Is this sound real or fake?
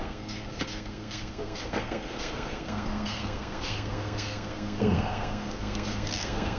fake